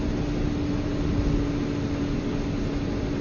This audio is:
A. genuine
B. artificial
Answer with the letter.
A